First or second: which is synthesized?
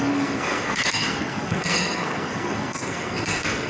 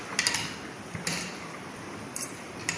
first